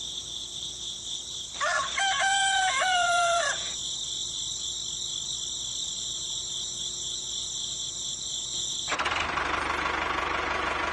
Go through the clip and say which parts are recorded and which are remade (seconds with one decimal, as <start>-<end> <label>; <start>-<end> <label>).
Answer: 0.0-1.5 remade; 1.5-2.2 recorded; 2.2-4.2 remade; 4.2-6.0 recorded; 6.0-8.9 remade; 8.9-9.8 recorded; 9.8-10.9 remade